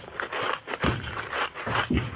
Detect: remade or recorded recorded